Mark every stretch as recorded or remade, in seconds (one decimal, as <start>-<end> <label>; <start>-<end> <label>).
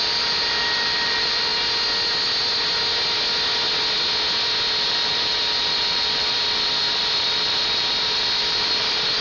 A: 0.0-1.5 remade; 1.5-4.8 recorded; 4.8-9.2 remade